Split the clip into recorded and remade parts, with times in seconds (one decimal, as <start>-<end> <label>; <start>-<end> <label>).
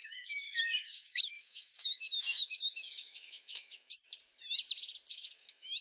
0.0-4.2 remade; 4.2-5.1 recorded; 5.1-5.8 remade